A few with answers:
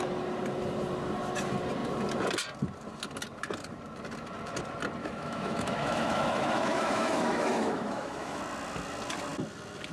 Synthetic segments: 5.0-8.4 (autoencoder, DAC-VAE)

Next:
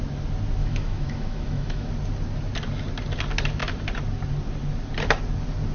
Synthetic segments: 0.6-1.9 (autoencoder, DAC-VAE)

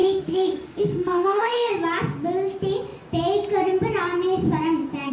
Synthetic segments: 0.0-1.7 (autoencoder, DAC-VAE)

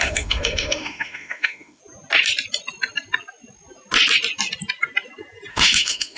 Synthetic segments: 0.0-1.8 (autoencoder, DAC-VAE); 5.5-6.2

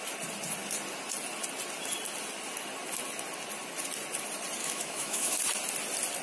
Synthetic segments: 4.6-5.4 (autoencoder, DAC-VAE)

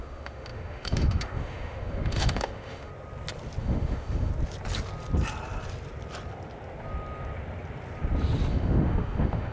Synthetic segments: 0.0-2.9 (autoencoder, DAC-VAE); 3.6-4.3; 8.5-9.5

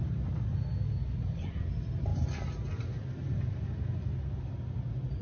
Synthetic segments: none